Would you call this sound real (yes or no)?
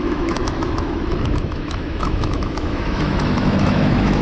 no